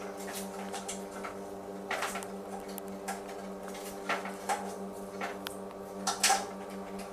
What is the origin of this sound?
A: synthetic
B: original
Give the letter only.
B